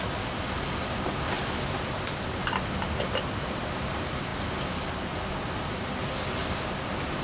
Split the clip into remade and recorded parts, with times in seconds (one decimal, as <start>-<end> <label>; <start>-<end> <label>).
0.0-7.2 recorded